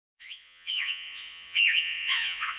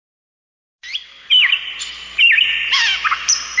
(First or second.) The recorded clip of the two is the second